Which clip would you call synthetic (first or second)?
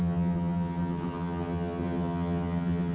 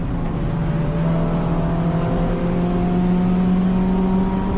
first